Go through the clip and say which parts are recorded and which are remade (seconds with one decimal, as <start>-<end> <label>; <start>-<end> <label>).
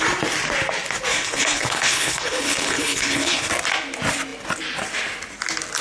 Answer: 0.0-1.1 recorded; 1.1-3.5 remade; 3.5-5.8 recorded